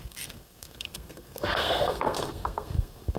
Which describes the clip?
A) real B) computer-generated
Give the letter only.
B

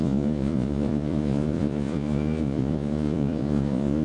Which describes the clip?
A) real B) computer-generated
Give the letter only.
B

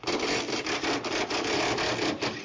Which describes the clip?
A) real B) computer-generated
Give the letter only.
A